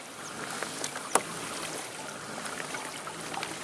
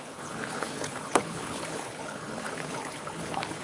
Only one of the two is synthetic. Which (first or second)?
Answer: second